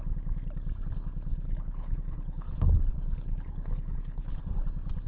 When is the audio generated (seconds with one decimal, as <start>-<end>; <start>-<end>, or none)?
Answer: 1.3-4.4

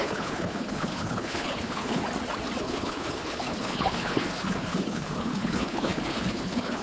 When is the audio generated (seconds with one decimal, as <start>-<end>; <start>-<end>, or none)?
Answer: 0.0-2.0; 2.6-6.8

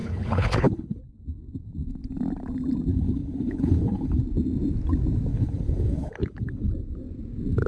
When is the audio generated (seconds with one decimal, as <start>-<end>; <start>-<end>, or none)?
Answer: 0.0-1.0; 2.9-4.2; 5.3-6.7